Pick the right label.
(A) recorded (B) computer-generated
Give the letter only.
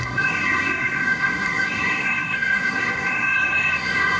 B